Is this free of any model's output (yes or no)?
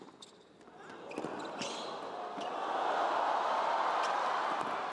yes